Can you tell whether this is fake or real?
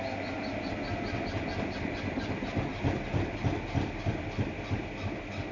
real